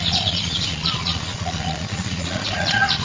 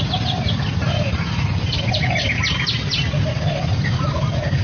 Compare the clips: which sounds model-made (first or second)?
first